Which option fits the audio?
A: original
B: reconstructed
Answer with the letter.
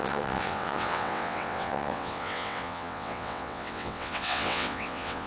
B